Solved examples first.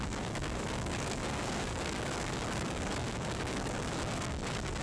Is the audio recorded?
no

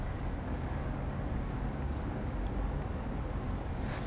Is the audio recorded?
no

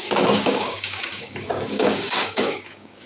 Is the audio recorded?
no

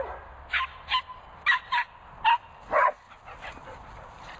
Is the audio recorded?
yes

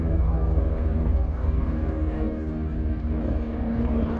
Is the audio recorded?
no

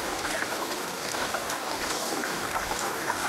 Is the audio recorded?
no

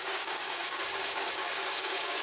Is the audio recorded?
no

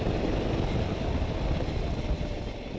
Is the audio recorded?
yes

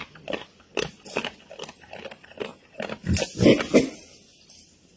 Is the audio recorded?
yes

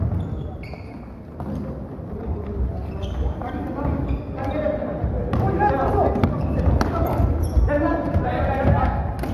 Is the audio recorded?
yes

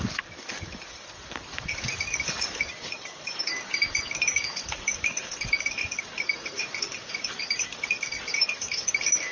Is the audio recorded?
no